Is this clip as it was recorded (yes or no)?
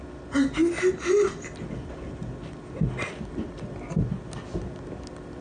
yes